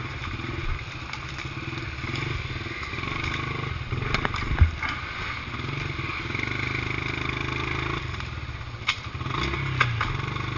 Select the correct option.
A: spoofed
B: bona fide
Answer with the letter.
B